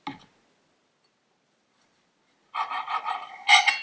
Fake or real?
real